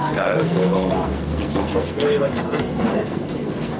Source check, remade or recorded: remade